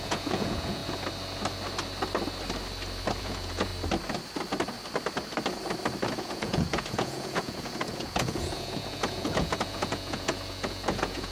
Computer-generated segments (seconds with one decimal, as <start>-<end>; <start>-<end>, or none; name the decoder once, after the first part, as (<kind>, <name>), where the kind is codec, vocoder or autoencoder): 0.0-0.8 (vocoder, Vocos); 3.2-3.7; 6.2-11.3